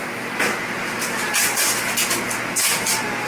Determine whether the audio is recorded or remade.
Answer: recorded